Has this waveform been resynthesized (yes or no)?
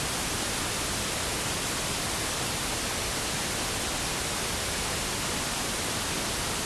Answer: no